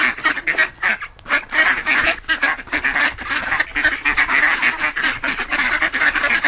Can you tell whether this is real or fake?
real